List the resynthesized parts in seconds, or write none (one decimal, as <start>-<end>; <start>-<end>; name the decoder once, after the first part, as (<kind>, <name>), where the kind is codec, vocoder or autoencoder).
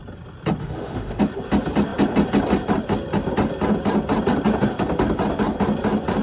0.6-1.2 (autoencoder, DAC-VAE)